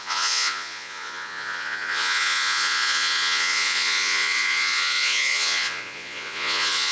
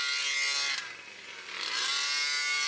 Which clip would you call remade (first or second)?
first